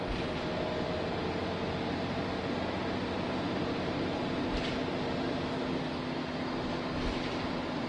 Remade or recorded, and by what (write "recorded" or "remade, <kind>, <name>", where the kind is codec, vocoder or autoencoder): recorded